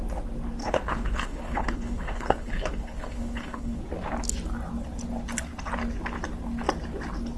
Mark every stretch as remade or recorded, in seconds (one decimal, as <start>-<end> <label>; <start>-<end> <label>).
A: 0.0-0.6 recorded; 0.6-3.8 remade; 3.8-7.4 recorded